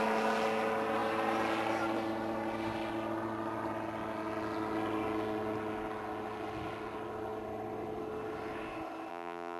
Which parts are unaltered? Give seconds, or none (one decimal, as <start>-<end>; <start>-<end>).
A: 0.0-9.1